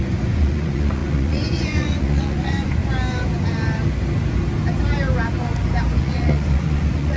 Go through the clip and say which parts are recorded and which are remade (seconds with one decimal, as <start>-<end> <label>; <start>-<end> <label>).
0.0-2.8 remade; 2.8-6.0 recorded; 6.0-7.2 remade